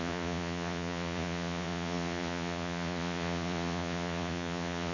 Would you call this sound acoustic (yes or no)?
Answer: no